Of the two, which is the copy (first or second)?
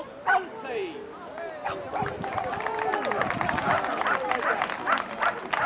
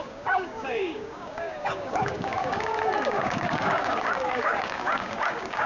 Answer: second